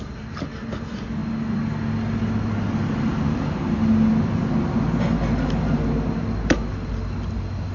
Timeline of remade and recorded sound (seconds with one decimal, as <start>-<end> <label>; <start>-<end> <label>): 0.0-7.7 recorded